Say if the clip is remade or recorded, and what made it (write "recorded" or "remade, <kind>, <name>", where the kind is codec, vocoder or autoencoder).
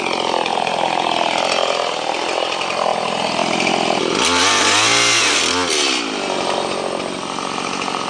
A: recorded